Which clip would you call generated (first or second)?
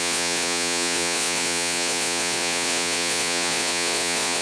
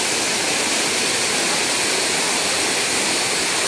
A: first